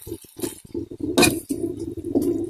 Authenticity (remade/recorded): recorded